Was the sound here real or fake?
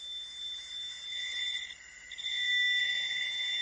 real